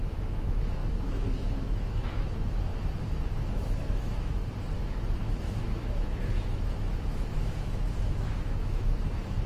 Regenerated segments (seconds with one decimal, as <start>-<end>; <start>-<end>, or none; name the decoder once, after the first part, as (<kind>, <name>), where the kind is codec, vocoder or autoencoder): 0.0-2.7 (autoencoder, DAC-VAE); 3.2-4.4; 5.2-9.5